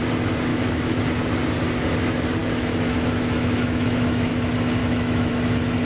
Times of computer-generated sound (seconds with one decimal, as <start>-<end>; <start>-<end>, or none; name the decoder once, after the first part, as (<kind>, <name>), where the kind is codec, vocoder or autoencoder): 0.5-1.0 (autoencoder, DAC-VAE); 2.4-4.3; 4.8-5.3